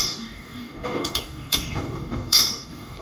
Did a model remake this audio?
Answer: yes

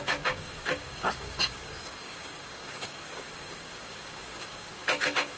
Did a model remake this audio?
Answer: yes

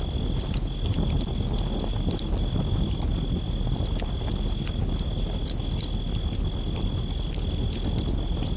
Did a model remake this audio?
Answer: no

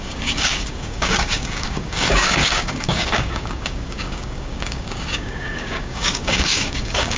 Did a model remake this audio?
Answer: yes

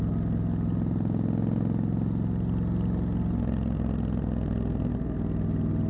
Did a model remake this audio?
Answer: no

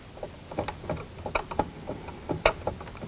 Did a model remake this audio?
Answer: no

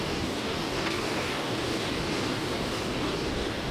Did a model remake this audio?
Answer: yes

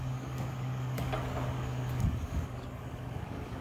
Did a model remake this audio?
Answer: yes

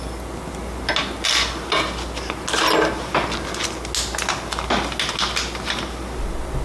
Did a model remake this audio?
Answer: no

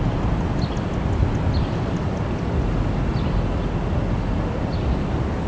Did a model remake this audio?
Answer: no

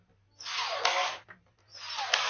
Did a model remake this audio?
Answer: no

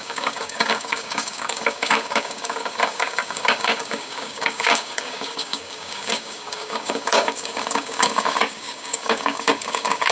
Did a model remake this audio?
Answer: yes